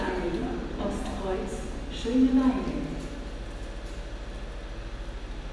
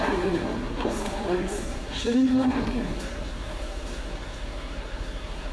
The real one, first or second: first